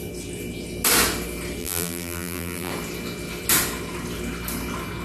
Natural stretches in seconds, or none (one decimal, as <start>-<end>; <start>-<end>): 0.0-1.6; 2.7-5.0